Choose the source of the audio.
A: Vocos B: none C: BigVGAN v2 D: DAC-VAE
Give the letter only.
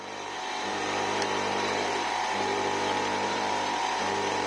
C